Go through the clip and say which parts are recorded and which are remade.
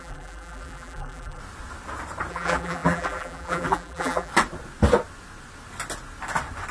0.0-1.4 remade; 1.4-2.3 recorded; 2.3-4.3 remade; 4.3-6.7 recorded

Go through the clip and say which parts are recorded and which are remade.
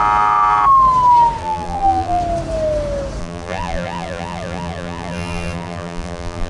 0.0-1.4 recorded; 1.4-2.2 remade; 2.2-3.2 recorded; 3.2-6.5 remade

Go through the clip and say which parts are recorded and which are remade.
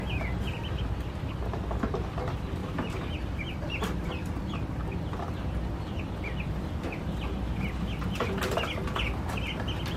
0.0-2.6 recorded; 2.6-4.1 remade; 4.1-10.0 recorded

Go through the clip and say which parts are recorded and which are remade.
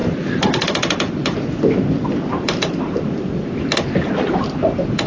0.0-3.1 remade; 3.1-5.1 recorded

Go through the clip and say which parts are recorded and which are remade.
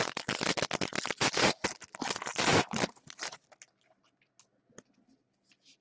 0.0-2.5 recorded; 2.5-3.5 remade; 3.5-5.8 recorded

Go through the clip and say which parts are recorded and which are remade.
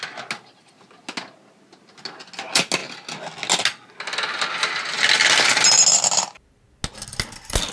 0.0-7.7 recorded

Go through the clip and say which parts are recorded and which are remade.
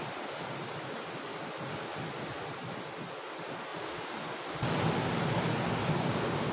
0.0-6.5 recorded